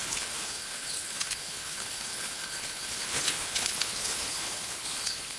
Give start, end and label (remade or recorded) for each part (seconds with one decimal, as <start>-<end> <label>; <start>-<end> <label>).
0.0-5.4 remade